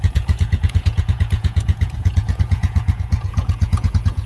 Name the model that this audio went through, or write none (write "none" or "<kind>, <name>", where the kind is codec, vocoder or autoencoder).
vocoder, Vocos